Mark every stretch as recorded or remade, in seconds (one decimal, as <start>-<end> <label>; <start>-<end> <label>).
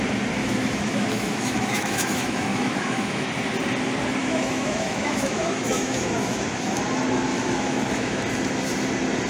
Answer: 0.0-0.4 recorded; 0.4-3.3 remade; 3.3-4.2 recorded; 4.2-6.8 remade; 6.8-7.3 recorded; 7.3-8.2 remade; 8.2-9.3 recorded